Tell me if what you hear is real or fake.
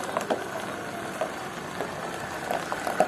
real